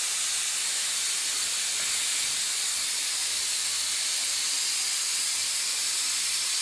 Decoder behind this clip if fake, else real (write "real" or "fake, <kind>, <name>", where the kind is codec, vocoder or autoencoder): real